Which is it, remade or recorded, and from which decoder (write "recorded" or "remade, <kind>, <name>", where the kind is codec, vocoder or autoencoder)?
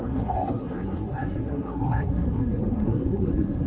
remade, codec, SNAC